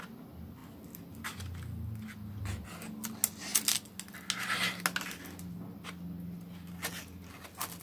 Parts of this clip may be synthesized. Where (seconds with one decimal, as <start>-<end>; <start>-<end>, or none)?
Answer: none